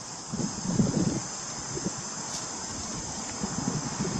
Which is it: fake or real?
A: real